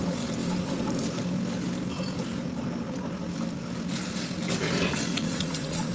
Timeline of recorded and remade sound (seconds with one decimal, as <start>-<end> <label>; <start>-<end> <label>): 0.0-5.1 recorded; 5.1-5.9 remade